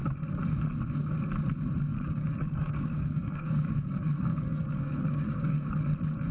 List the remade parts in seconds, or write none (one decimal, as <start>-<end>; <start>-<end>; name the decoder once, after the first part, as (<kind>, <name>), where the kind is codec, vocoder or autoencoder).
1.9-5.7 (codec, DAC)